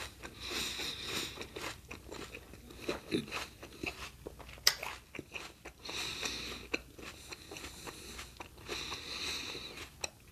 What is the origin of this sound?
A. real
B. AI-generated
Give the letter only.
A